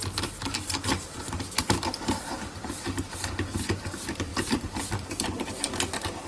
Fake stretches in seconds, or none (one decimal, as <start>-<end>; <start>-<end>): none